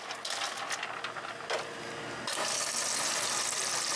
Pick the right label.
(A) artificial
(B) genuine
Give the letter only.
B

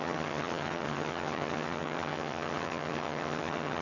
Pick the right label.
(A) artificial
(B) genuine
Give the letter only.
A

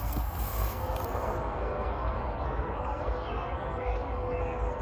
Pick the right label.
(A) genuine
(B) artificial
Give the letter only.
B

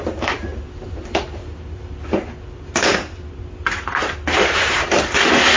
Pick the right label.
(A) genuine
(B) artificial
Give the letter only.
A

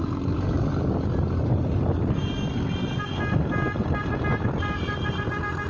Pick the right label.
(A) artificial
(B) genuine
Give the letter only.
B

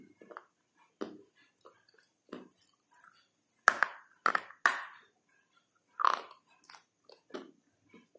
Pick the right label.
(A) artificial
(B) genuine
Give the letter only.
B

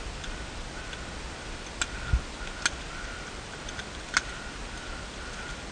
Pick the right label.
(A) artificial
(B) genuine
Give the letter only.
B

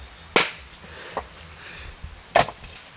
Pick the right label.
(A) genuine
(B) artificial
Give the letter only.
A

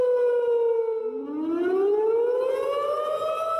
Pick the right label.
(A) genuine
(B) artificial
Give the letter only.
A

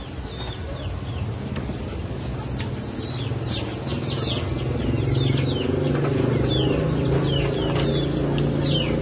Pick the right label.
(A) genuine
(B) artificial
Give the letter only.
A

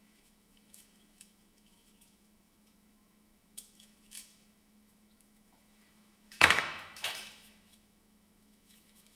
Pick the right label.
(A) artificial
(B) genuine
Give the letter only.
A